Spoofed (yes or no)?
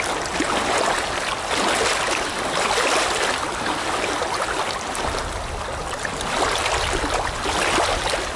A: no